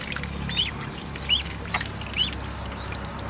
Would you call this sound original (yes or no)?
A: yes